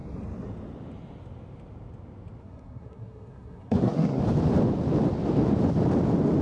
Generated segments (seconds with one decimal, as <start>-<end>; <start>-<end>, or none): 2.4-4.2